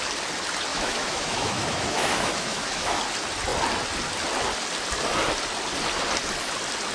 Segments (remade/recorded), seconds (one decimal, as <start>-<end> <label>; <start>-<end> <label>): 0.0-0.7 recorded; 0.7-3.0 remade; 3.0-6.9 recorded